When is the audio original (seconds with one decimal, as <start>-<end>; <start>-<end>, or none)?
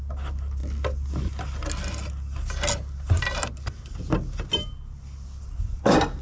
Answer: 0.0-6.2